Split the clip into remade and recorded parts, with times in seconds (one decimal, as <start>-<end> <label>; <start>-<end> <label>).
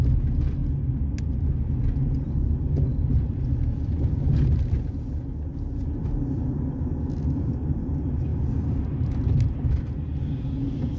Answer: 0.0-2.9 recorded; 2.9-5.2 remade; 5.2-11.0 recorded